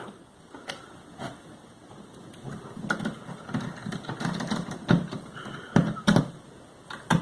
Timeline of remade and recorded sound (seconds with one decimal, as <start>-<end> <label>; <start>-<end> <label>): 0.0-7.2 recorded